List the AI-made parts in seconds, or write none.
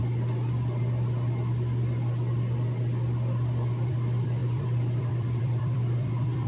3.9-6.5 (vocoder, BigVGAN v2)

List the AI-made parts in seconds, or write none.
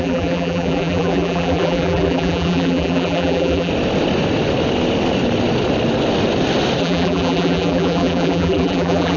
0.0-3.7 (vocoder, BigVGAN v2); 6.8-9.2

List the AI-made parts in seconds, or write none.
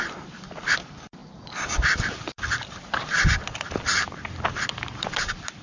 0.0-3.9 (vocoder, BigVGAN v2); 4.8-5.6